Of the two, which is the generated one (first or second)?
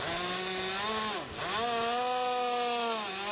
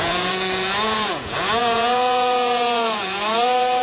second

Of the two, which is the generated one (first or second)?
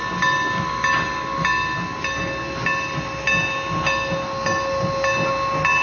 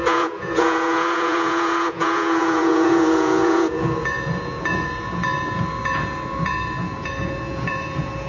second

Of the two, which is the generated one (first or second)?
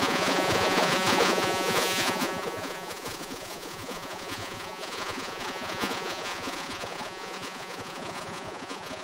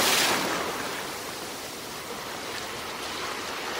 first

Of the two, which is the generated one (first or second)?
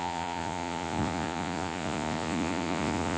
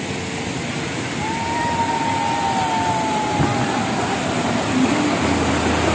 first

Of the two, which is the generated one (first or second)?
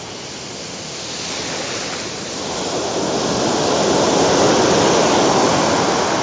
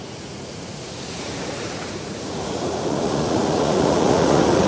second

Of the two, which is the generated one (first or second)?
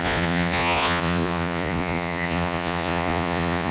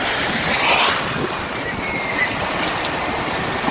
first